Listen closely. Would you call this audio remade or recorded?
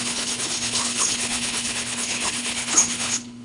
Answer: remade